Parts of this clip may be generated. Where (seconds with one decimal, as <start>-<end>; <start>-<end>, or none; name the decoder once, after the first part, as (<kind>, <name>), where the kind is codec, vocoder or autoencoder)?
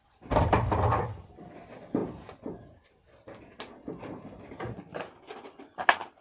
0.0-2.0 (vocoder, BigVGAN v2); 4.4-6.2